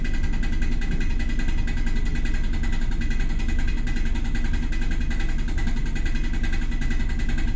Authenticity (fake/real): real